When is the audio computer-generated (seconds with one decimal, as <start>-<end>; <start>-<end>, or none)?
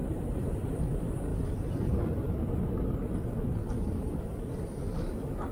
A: 0.0-0.8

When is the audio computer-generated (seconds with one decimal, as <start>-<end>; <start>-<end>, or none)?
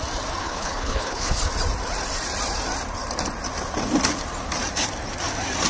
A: 0.4-1.4